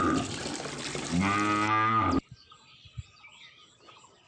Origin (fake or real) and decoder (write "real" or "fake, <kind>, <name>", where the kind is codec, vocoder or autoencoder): real